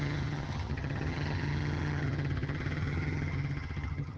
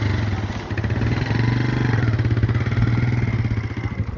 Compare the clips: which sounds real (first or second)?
second